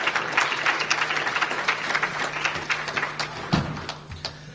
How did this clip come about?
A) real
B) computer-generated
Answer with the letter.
A